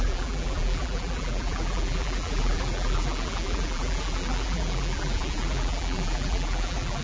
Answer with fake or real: fake